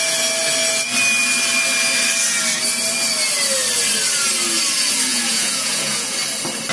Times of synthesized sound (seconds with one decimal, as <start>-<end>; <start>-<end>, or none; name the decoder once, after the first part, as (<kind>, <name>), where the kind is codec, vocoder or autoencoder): 5.1-6.2 (vocoder, Vocos)

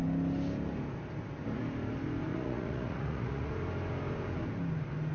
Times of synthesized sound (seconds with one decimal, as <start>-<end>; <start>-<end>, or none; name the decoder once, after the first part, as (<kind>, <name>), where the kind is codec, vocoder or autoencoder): 2.3-3.5 (vocoder, Vocos)

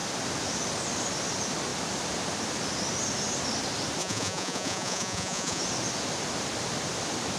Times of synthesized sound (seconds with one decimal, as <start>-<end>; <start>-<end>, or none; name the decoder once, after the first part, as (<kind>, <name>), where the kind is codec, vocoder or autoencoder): 4.0-5.6 (vocoder, Vocos)

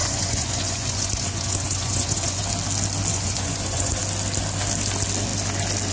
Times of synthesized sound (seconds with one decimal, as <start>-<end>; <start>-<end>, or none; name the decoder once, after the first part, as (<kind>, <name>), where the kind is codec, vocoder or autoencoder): 0.0-2.4 (vocoder, Vocos); 3.1-4.0